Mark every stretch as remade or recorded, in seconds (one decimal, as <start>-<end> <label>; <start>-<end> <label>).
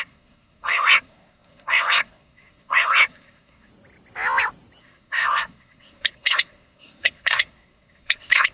0.0-3.7 remade; 3.7-4.8 recorded; 4.8-8.5 remade